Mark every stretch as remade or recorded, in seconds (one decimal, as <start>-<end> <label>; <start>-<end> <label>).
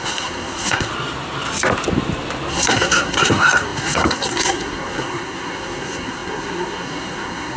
0.0-0.9 remade; 0.9-2.5 recorded; 2.5-7.6 remade